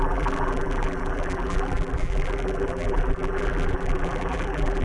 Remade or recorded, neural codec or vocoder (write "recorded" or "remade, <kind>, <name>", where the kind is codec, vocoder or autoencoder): remade, vocoder, BigVGAN v2